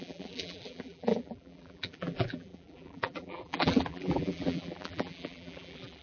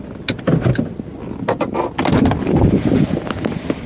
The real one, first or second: second